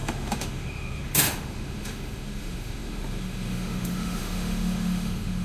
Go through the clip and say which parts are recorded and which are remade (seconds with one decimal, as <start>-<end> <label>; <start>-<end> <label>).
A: 0.0-5.4 remade